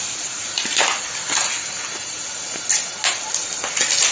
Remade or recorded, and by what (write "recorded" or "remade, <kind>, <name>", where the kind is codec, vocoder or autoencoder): recorded